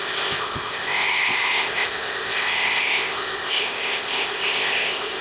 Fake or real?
fake